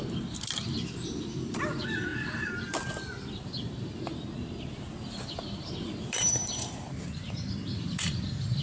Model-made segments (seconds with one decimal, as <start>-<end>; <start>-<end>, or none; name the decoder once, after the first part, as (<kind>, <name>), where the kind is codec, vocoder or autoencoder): 0.0-2.1 (vocoder, BigVGAN v2); 3.3-4.1; 4.8-8.6